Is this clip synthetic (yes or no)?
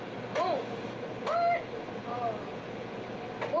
no